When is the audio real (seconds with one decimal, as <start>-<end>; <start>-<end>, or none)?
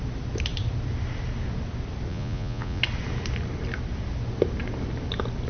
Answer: 0.0-2.1; 2.8-5.5